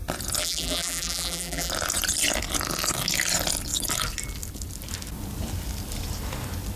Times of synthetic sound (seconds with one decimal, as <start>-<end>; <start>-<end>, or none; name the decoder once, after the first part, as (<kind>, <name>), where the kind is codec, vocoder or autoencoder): 0.4-1.7 (vocoder, BigVGAN v2)